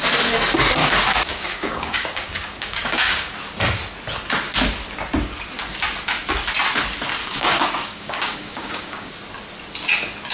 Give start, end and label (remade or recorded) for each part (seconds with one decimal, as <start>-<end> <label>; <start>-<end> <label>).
0.0-0.8 recorded; 0.8-3.3 remade; 3.3-7.2 recorded; 7.2-9.1 remade; 9.1-10.3 recorded